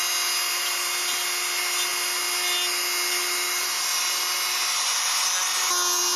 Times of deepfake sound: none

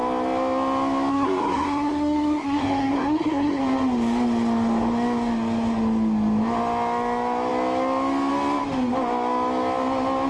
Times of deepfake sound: 1.1-3.6 (codec, SNAC)

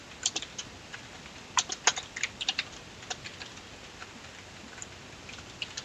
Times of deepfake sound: none

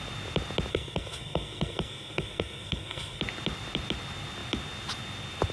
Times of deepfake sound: 0.7-3.2 (codec, SNAC)

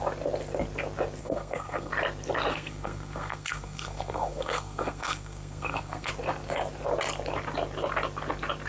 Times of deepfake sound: 1.2-1.9 (codec, SNAC); 2.5-6.1